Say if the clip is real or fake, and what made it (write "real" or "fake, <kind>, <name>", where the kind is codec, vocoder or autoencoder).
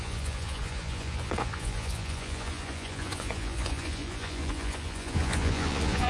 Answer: fake, vocoder, Vocos